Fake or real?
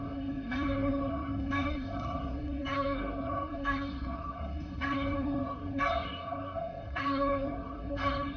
fake